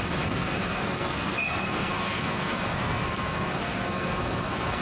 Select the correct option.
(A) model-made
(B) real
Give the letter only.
A